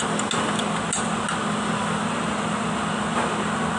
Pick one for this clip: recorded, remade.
recorded